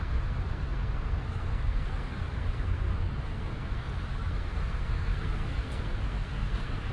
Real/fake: fake